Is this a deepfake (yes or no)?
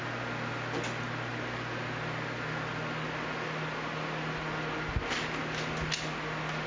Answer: no